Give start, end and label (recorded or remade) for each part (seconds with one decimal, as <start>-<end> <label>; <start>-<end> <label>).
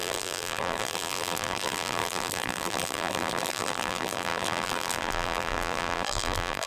0.0-6.7 remade